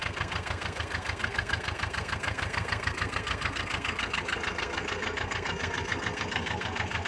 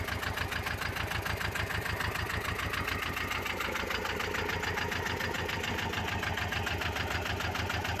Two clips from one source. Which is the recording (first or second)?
second